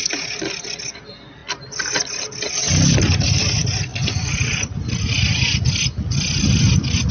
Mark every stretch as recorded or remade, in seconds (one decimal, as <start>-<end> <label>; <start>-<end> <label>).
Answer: 0.0-7.1 recorded